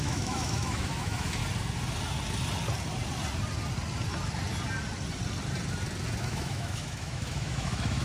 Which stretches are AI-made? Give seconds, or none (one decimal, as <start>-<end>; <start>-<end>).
0.0-1.4; 6.2-8.0